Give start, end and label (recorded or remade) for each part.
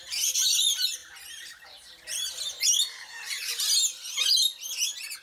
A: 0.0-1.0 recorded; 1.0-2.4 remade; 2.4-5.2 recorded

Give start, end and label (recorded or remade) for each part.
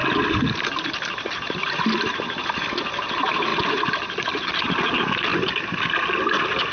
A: 0.0-6.7 recorded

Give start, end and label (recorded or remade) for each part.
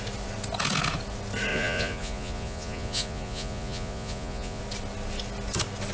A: 0.0-1.5 recorded; 1.5-4.6 remade; 4.6-5.9 recorded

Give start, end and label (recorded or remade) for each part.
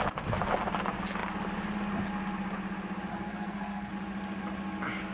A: 0.0-3.1 recorded; 3.1-3.9 remade; 3.9-5.1 recorded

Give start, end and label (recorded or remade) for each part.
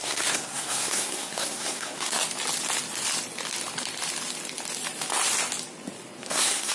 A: 0.0-2.2 remade; 2.2-6.2 recorded; 6.2-6.7 remade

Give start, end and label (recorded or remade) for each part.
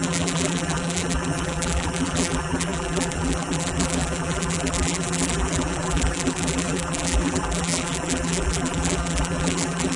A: 0.0-10.0 remade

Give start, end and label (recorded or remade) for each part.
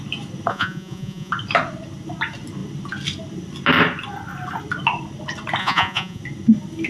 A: 0.0-0.5 recorded; 0.5-1.3 remade; 1.3-5.6 recorded; 5.6-6.2 remade; 6.2-6.9 recorded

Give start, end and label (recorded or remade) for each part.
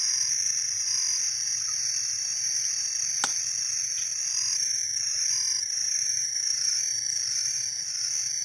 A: 0.0-5.8 recorded; 5.8-6.8 remade; 6.8-8.4 recorded